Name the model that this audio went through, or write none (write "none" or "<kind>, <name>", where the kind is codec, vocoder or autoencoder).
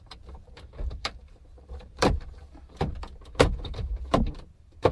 vocoder, BigVGAN v2